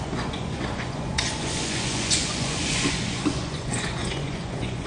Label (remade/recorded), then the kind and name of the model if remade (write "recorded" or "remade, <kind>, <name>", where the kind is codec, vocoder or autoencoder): remade, vocoder, Vocos